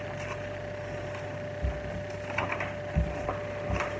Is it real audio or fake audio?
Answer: real